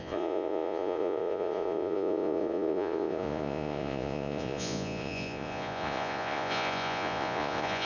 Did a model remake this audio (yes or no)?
yes